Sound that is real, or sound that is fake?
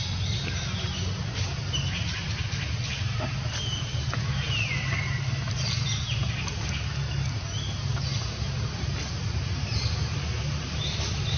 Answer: real